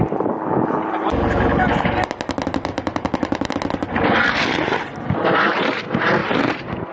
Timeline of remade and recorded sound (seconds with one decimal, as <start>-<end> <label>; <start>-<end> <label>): 0.0-2.7 recorded; 2.7-3.5 remade; 3.5-6.2 recorded; 6.2-6.9 remade